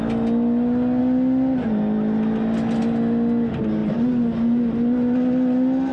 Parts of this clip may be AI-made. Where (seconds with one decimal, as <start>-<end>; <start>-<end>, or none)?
none